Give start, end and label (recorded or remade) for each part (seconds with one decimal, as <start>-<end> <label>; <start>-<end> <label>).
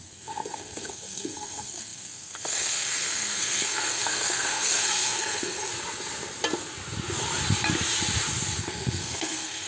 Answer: 0.0-5.7 remade; 5.7-8.6 recorded; 8.6-9.7 remade